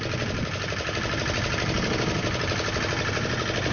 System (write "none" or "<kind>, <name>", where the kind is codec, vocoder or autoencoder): none